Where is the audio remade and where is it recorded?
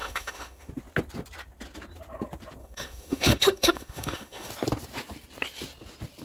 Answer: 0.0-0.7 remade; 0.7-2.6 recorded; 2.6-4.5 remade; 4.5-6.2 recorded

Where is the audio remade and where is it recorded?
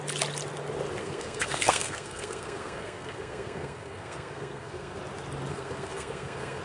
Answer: 0.0-1.0 recorded; 1.0-5.0 remade; 5.0-5.5 recorded; 5.5-6.6 remade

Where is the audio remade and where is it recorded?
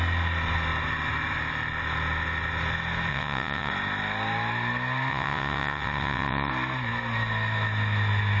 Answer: 0.0-3.1 recorded; 3.1-3.7 remade; 3.7-5.1 recorded; 5.1-6.5 remade; 6.5-8.4 recorded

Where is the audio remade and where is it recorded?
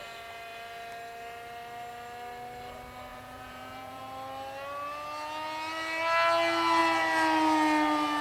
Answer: 0.0-3.1 recorded; 3.1-4.0 remade; 4.0-8.2 recorded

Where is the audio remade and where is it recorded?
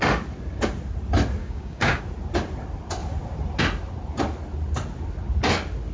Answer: 0.0-1.4 recorded; 1.4-2.0 remade; 2.0-5.9 recorded